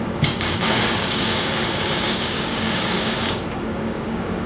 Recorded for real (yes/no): no